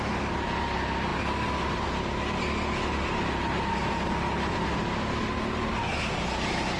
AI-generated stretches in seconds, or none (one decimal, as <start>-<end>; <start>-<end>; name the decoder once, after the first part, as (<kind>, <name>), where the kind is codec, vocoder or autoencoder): none